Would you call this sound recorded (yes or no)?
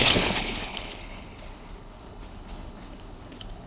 no